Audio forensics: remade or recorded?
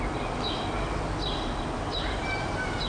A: recorded